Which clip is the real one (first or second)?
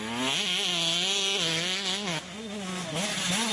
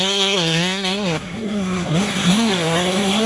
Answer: first